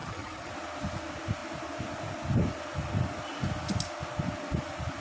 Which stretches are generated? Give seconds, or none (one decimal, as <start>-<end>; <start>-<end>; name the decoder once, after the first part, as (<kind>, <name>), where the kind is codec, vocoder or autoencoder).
0.0-0.5 (vocoder, HiFi-GAN)